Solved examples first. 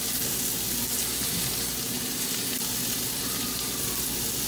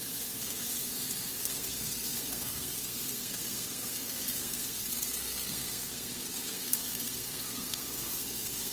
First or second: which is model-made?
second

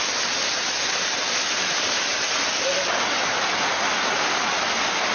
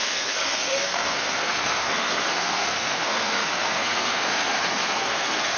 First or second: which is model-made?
second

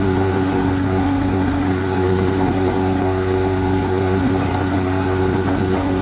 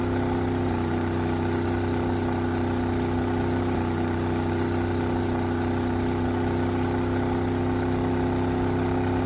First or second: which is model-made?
first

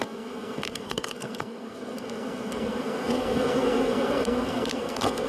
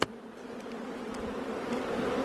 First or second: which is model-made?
first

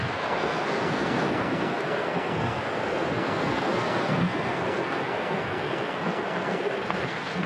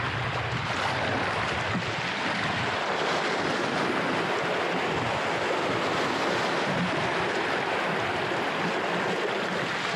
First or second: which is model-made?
first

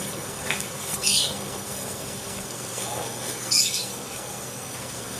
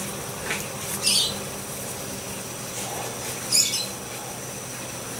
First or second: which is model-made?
first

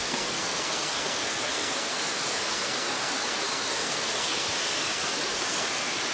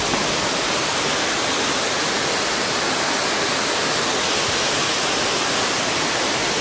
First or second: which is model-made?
first